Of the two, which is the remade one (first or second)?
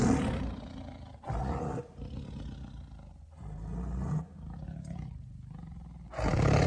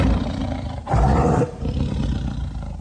second